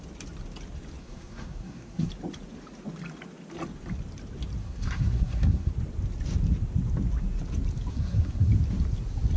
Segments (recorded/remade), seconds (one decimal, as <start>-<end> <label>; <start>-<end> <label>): 0.0-1.0 recorded; 1.0-2.1 remade; 2.1-4.6 recorded; 4.6-5.7 remade; 5.7-7.9 recorded; 7.9-8.5 remade; 8.5-9.4 recorded